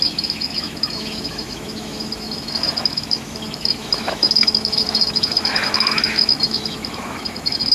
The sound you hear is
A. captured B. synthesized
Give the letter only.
B